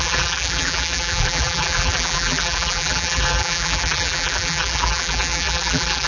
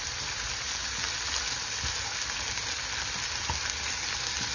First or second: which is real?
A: second